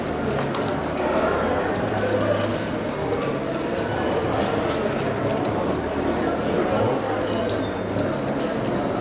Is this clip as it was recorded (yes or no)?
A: yes